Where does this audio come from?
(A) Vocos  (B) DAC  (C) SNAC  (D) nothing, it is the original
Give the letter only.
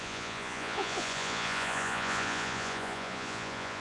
A